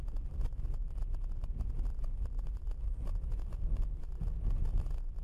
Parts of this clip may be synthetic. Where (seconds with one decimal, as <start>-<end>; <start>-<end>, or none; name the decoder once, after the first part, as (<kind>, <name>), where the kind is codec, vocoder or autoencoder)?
1.9-4.0 (vocoder, BigVGAN v2)